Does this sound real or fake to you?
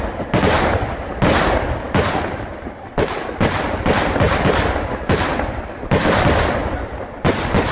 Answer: real